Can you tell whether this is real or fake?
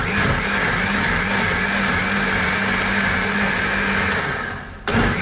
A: real